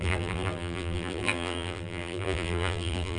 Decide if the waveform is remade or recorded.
remade